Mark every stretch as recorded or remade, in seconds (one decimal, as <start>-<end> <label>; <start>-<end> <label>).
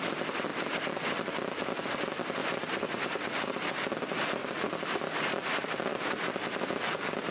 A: 0.0-0.5 recorded; 0.5-1.1 remade; 1.1-2.4 recorded; 2.4-3.8 remade; 3.8-4.4 recorded; 4.4-6.7 remade; 6.7-7.3 recorded